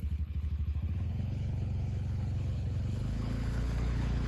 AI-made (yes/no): yes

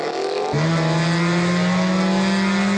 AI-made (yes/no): no